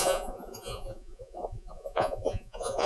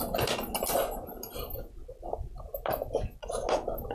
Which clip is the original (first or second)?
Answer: second